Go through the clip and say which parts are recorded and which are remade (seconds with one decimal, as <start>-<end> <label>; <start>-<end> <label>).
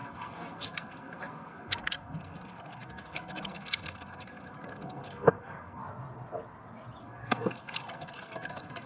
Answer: 0.0-5.8 remade; 5.8-7.0 recorded; 7.0-8.9 remade